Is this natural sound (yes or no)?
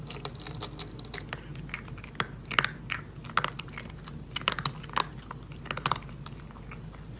yes